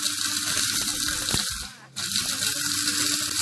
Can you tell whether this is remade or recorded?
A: recorded